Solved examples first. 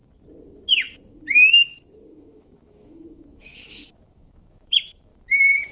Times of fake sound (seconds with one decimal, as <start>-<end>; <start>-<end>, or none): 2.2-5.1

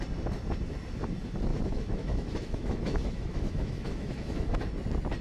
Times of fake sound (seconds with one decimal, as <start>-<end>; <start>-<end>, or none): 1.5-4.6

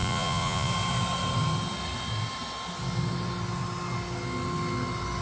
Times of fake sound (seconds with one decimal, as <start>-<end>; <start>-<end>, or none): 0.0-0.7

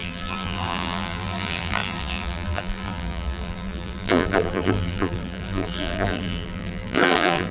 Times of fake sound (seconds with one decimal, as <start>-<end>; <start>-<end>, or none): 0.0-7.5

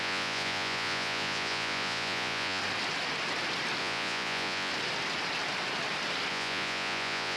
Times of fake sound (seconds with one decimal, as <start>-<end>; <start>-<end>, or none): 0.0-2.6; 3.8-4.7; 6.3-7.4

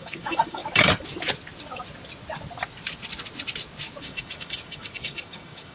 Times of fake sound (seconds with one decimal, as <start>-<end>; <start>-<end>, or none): 0.0-0.6; 4.0-5.7

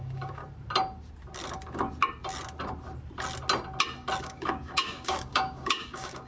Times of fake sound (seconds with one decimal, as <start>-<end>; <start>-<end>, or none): 0.0-0.4; 4.2-6.3

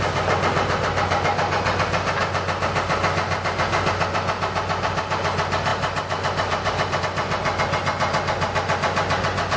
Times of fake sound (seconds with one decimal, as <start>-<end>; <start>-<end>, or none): none